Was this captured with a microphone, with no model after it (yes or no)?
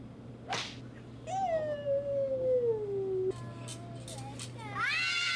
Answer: yes